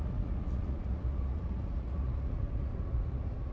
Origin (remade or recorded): remade